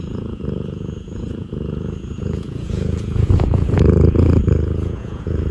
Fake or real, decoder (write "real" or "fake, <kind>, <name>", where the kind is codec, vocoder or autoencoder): fake, vocoder, Vocos